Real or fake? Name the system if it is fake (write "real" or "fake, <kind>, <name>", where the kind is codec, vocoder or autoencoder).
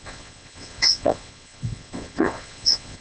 fake, vocoder, Vocos